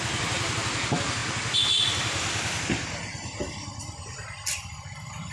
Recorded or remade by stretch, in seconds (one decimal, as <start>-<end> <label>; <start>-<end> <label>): 0.0-5.3 recorded